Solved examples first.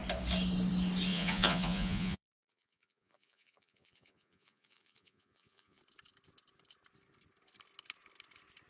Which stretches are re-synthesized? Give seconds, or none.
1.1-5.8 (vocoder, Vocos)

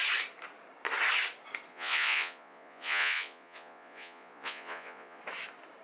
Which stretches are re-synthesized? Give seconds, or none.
1.7-5.2 (vocoder, Vocos)

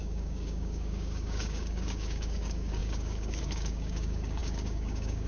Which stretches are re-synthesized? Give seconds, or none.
0.0-5.3 (codec, DAC)

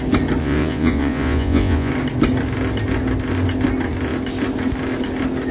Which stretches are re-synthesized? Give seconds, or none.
0.4-1.9 (vocoder, Vocos)

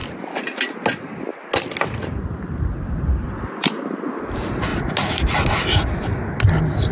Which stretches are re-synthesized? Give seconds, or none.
none

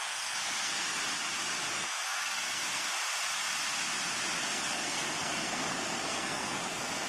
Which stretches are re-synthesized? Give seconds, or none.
0.0-1.0 (codec, SNAC); 1.7-2.9; 4.4-7.1

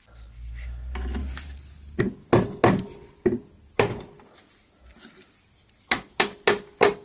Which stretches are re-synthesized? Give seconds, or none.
1.2-2.0 (vocoder, BigVGAN v2)